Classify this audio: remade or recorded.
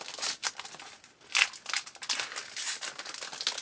recorded